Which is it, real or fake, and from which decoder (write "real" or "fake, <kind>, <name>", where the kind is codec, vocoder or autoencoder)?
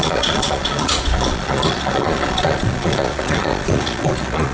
fake, vocoder, Vocos